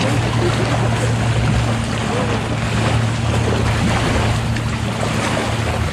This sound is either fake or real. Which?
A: real